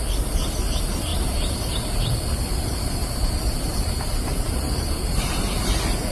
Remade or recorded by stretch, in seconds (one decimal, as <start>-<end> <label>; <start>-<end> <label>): 0.0-1.1 recorded; 1.1-2.0 remade; 2.0-3.0 recorded; 3.0-5.6 remade; 5.6-6.1 recorded